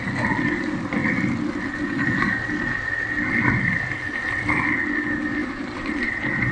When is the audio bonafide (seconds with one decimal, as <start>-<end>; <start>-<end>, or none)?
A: 0.0-5.4